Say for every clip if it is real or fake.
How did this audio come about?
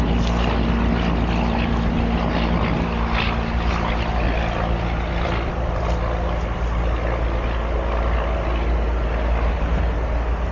real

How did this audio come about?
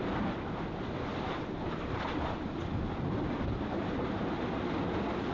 real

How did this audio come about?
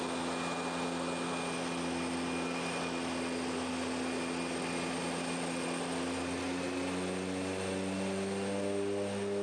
real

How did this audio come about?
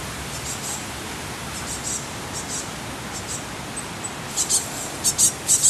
real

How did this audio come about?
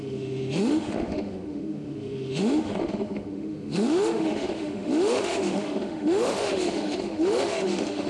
fake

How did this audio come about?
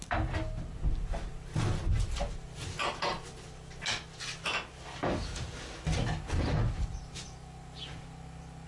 real